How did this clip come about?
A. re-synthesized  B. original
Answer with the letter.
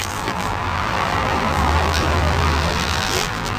A